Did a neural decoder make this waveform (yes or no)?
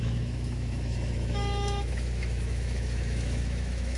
yes